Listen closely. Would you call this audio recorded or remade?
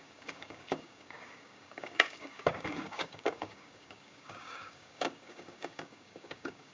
remade